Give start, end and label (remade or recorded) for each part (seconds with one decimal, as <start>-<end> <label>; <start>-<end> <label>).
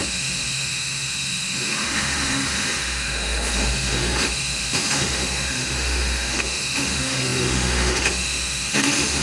0.0-9.2 remade